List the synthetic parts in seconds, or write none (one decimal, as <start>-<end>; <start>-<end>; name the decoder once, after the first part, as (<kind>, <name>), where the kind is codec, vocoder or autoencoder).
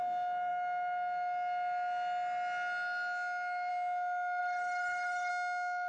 4.4-5.3 (codec, DAC)